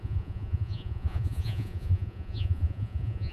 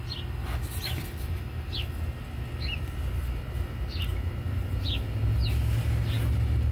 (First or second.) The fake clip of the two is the first